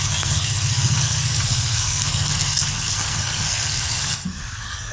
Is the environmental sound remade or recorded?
remade